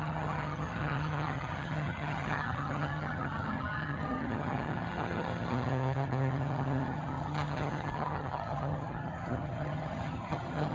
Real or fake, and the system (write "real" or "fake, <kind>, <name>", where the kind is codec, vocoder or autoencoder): fake, vocoder, HiFi-GAN